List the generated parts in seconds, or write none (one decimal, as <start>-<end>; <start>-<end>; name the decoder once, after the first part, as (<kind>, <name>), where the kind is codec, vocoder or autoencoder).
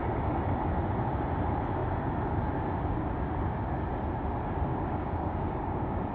4.7-6.1 (codec, DAC)